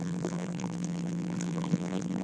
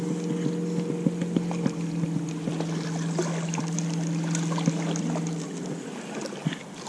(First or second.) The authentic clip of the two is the second